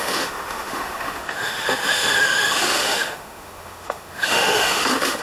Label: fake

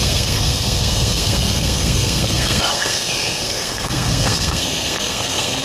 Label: fake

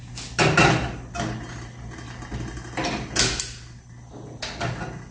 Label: real